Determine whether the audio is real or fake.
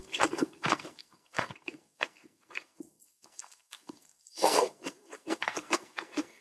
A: fake